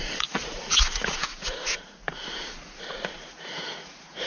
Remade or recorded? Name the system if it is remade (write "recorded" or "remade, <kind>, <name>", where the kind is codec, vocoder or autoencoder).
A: remade, vocoder, Vocos